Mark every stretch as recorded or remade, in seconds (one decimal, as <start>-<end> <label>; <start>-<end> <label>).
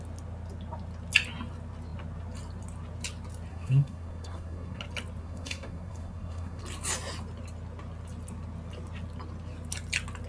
0.0-3.5 recorded; 3.5-4.8 remade; 4.8-5.2 recorded; 5.2-6.6 remade; 6.6-10.3 recorded